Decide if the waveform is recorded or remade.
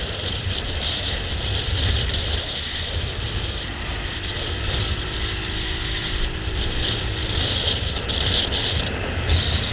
remade